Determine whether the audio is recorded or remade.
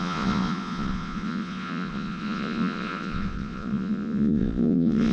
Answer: remade